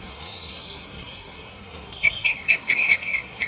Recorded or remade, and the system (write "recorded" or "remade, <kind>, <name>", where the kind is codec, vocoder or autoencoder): remade, codec, SNAC